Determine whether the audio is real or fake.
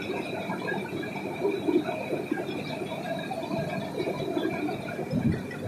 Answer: real